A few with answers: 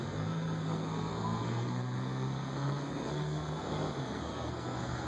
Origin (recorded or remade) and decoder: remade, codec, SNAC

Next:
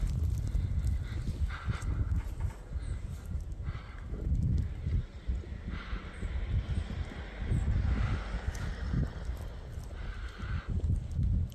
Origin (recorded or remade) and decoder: recorded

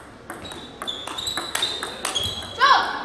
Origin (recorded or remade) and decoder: recorded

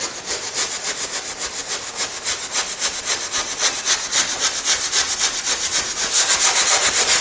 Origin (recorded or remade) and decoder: recorded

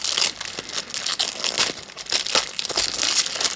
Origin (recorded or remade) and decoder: recorded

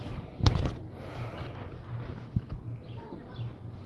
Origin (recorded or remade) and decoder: recorded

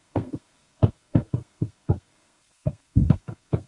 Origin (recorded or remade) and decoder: remade, codec, SNAC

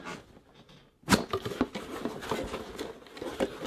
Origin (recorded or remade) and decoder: recorded